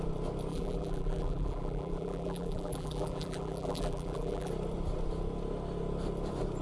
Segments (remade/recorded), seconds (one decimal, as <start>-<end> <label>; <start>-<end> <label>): 0.0-0.5 recorded; 0.5-4.5 remade; 4.5-6.6 recorded